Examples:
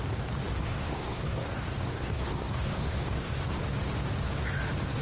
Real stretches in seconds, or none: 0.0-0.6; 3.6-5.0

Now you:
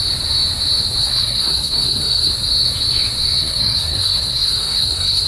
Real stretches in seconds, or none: 0.0-1.0; 2.3-3.4

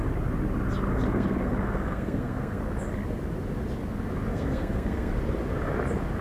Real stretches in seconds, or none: 0.0-0.9; 2.6-4.3; 5.1-6.2

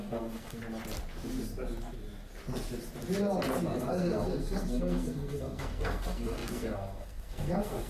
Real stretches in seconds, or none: 0.6-3.8

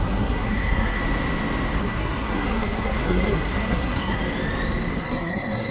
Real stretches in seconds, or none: 1.0-1.8; 4.2-5.0

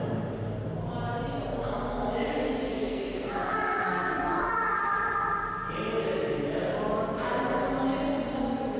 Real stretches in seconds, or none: 0.0-2.7; 4.4-8.8

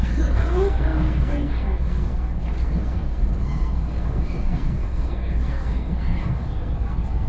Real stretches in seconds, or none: none